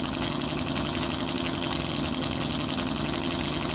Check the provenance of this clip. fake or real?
fake